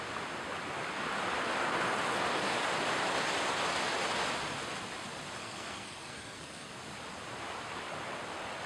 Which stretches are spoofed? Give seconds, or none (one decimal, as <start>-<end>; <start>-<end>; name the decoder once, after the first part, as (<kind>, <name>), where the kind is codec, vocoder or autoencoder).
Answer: 5.4-6.7 (codec, SNAC)

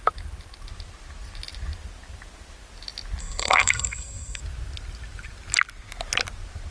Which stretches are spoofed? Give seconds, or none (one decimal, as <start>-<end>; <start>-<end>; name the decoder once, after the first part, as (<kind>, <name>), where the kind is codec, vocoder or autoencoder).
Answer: 3.2-4.4 (codec, SNAC)